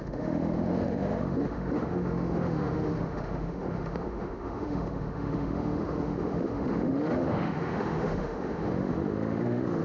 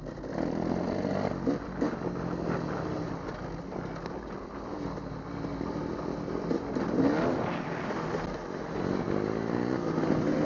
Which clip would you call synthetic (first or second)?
first